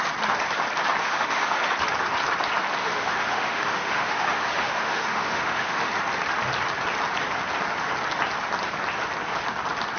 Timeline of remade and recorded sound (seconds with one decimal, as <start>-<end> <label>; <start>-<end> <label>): 0.0-1.0 recorded; 1.0-1.6 remade; 1.6-2.8 recorded; 2.8-5.9 remade; 5.9-10.0 recorded